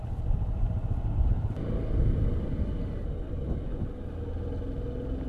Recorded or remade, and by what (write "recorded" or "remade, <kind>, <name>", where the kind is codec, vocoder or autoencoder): recorded